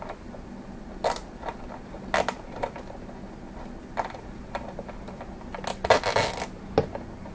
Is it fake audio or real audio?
real